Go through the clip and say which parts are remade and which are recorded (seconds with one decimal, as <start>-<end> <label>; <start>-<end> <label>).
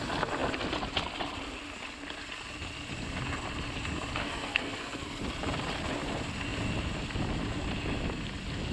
0.0-4.2 recorded; 4.2-5.2 remade; 5.2-8.7 recorded